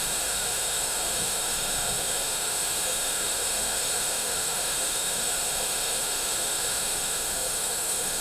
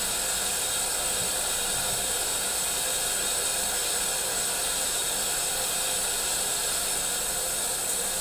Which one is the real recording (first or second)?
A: second